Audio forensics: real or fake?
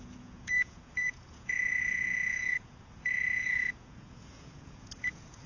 fake